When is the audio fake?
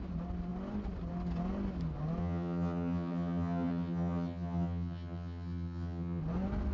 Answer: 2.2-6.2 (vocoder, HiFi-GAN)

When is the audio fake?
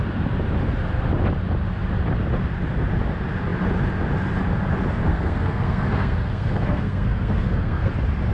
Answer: 5.1-7.9 (codec, SNAC)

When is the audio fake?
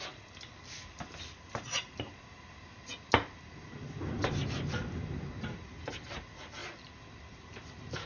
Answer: none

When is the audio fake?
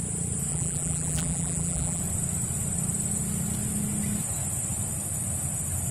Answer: 0.5-2.0 (vocoder, BigVGAN v2)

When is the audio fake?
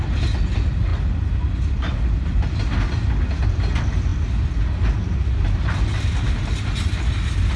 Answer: none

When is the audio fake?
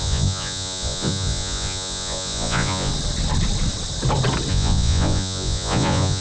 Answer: 0.0-2.9 (vocoder, Vocos); 4.5-6.2